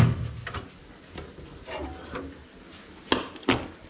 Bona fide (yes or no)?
yes